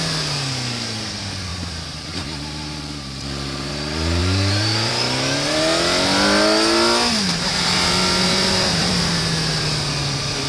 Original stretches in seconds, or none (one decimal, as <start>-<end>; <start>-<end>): 0.0-1.5; 3.7-4.2; 4.9-7.3; 9.2-10.5